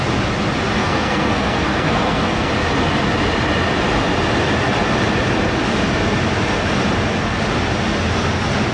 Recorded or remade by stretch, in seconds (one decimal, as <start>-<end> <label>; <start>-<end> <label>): 0.0-0.8 recorded; 0.8-2.5 remade; 2.5-8.7 recorded